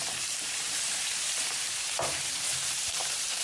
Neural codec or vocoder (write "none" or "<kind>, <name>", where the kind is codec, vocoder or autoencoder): vocoder, BigVGAN v2